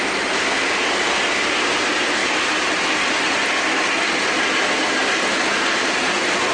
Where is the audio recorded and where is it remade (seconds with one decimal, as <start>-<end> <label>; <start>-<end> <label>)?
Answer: 0.0-6.5 recorded